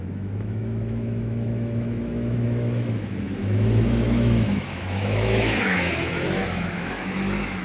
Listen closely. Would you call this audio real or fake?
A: fake